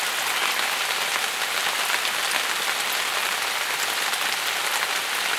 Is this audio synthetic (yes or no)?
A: no